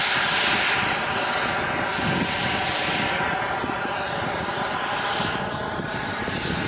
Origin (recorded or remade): recorded